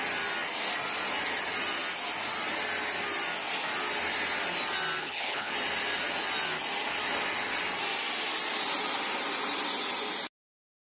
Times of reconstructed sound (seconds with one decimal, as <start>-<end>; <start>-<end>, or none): 5.0-5.5